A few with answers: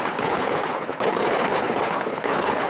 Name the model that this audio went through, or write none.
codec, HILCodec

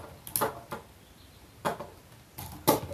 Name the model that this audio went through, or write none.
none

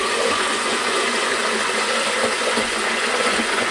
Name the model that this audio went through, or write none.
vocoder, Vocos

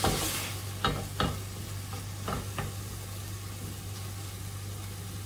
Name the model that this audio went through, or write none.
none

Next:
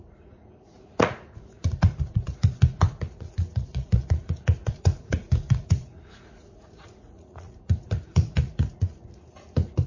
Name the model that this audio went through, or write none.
vocoder, Vocos